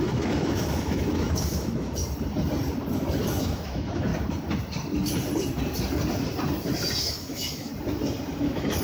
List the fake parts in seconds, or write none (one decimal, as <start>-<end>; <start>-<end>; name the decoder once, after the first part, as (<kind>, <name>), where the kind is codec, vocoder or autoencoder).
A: 0.0-2.0 (autoencoder, DAC-VAE); 3.4-4.1; 7.0-7.7; 8.3-8.8